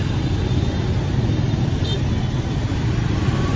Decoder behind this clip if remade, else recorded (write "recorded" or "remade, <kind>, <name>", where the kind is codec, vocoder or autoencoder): recorded